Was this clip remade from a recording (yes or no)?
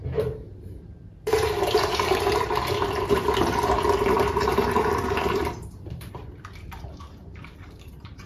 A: yes